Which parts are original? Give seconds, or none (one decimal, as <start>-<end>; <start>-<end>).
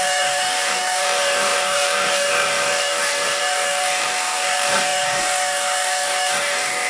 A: none